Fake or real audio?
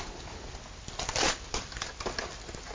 real